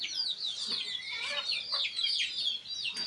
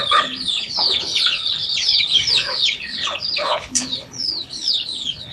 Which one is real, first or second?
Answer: first